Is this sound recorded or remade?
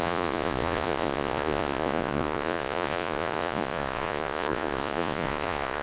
remade